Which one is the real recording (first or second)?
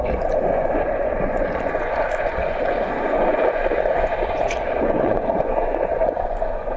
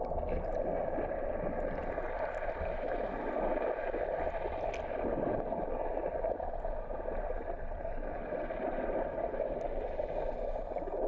second